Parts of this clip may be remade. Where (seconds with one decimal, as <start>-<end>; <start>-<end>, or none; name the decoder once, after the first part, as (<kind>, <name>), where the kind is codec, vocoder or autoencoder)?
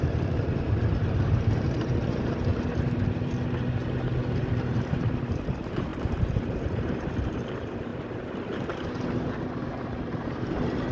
0.0-2.5 (vocoder, BigVGAN v2); 4.4-7.9; 9.7-10.9